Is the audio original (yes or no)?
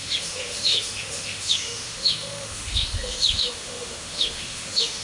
no